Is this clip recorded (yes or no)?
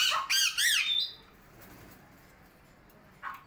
yes